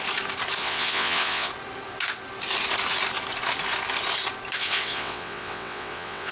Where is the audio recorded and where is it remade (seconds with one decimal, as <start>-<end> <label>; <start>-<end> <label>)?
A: 0.0-0.6 recorded; 0.6-1.5 remade; 1.5-4.6 recorded; 4.6-6.3 remade